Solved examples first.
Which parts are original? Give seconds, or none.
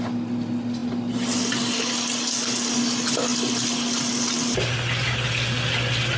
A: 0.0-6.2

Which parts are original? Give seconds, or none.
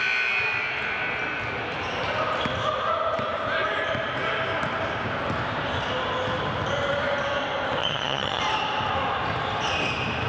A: 0.0-7.8; 8.4-10.3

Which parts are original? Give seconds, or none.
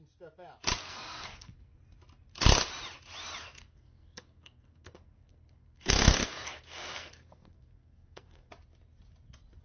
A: 0.0-0.8; 1.8-3.4; 8.5-9.6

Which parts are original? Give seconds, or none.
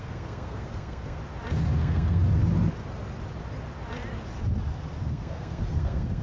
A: 1.2-1.8; 2.2-5.0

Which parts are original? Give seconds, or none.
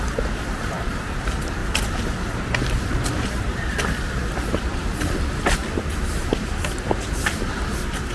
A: 1.6-2.8; 5.6-6.3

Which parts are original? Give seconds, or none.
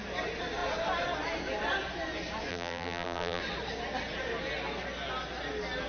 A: 0.0-2.5; 3.4-5.9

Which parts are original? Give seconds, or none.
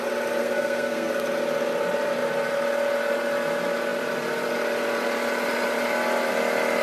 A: 0.0-0.4; 1.1-6.8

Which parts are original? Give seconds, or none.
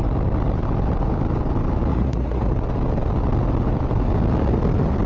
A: 0.0-1.9; 2.5-5.1